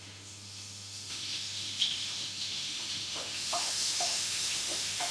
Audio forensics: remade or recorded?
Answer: remade